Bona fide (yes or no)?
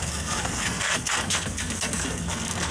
no